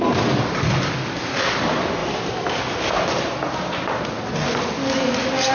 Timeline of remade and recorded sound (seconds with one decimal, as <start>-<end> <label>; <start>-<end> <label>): 0.0-5.5 recorded